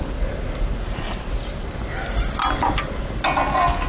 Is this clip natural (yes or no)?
yes